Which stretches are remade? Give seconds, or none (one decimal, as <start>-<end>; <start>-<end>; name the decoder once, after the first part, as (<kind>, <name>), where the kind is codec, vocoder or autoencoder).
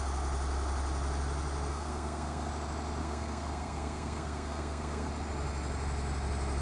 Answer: 1.7-2.5 (codec, SNAC); 3.0-5.1